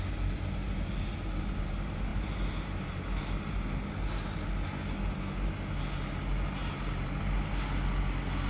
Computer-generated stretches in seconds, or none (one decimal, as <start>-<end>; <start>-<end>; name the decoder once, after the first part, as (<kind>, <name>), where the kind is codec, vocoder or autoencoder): none